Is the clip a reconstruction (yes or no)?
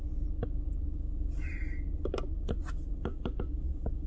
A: no